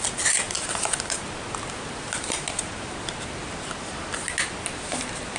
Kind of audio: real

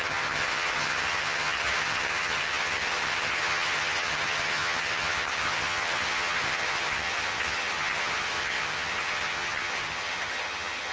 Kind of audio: fake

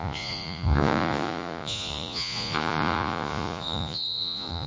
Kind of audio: fake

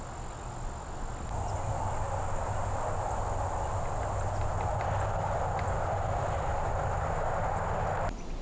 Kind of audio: real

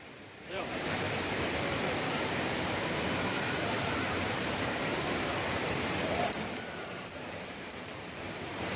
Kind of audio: fake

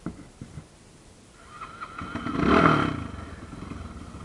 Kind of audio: real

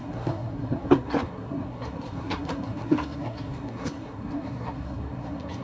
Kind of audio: fake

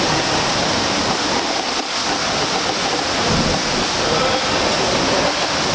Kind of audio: real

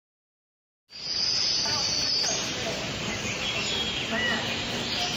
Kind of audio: real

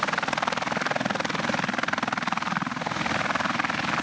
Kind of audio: real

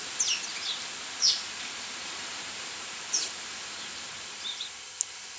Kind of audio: real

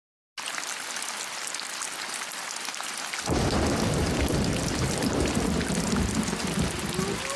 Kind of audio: real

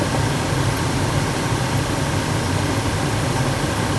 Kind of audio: real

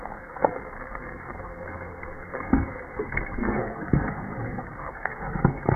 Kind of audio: fake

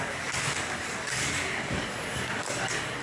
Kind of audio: fake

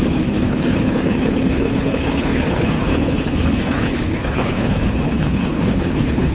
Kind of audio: fake